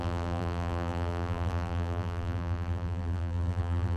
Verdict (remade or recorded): remade